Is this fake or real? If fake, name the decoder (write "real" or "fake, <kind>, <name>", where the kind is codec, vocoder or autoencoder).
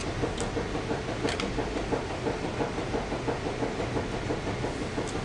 real